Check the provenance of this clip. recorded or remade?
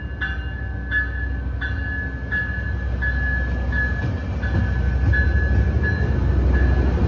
recorded